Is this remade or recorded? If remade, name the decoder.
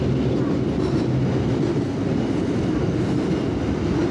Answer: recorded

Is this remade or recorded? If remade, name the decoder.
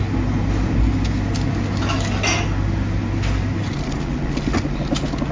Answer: recorded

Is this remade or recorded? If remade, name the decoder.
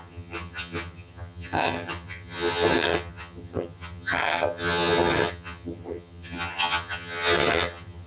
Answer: remade, vocoder, HiFi-GAN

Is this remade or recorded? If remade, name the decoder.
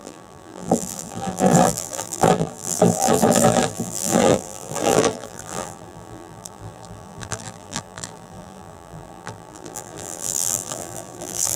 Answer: remade, vocoder, BigVGAN v2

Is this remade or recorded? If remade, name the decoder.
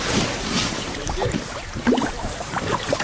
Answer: remade, vocoder, BigVGAN v2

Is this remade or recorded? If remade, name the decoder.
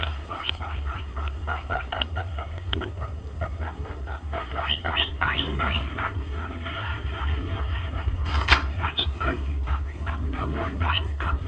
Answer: remade, codec, SNAC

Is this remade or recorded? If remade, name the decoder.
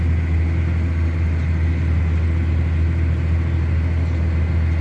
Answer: recorded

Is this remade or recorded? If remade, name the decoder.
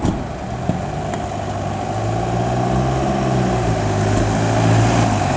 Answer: recorded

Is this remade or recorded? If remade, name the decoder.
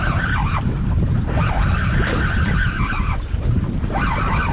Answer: remade, vocoder, BigVGAN v2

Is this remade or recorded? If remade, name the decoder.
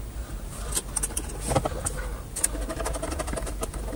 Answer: recorded